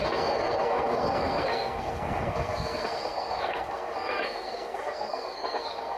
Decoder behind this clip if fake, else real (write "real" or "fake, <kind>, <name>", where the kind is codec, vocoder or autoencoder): fake, codec, SNAC